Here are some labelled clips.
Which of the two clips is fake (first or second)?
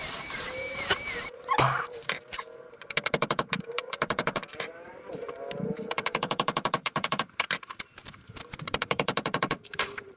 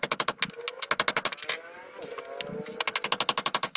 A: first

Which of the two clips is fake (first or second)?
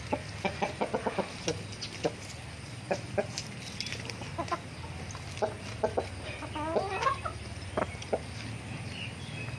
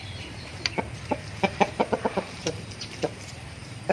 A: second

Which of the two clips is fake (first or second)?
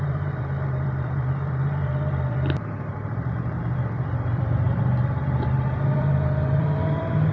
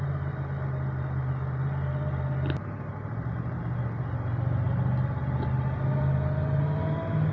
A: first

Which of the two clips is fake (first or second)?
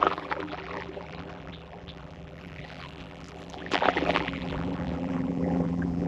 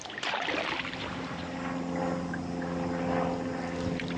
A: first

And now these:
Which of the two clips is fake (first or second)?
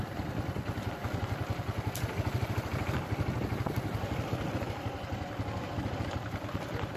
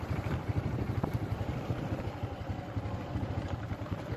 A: second